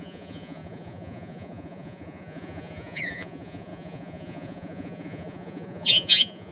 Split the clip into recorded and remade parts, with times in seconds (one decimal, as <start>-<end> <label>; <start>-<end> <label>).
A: 0.0-6.5 remade